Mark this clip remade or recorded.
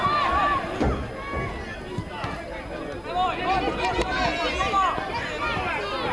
recorded